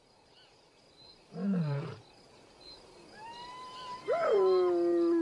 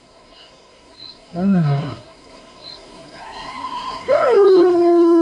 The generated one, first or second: second